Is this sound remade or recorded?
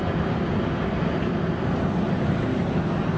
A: recorded